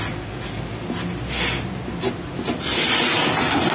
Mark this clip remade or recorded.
recorded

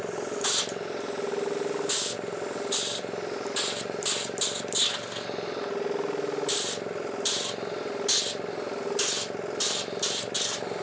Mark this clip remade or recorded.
recorded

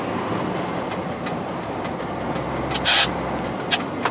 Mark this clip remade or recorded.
recorded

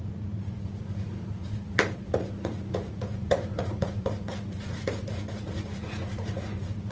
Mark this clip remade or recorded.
remade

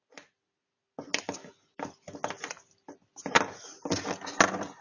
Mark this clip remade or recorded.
recorded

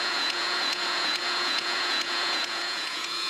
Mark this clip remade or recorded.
remade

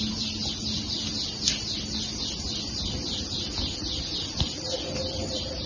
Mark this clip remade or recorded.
recorded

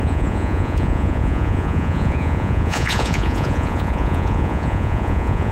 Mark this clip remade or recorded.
remade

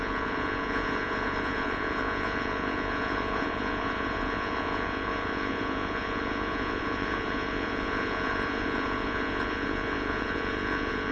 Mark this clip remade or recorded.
remade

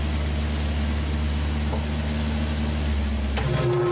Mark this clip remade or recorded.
recorded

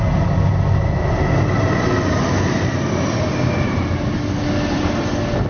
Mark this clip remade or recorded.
recorded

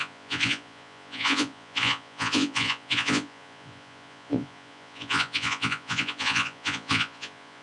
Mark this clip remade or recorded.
remade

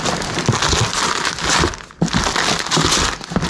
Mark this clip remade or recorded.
recorded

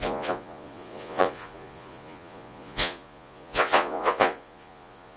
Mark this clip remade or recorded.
remade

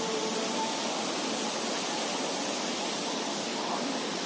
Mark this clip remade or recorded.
recorded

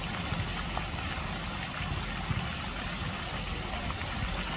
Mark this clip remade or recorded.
recorded